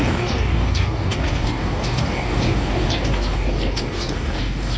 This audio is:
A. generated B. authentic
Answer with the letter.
A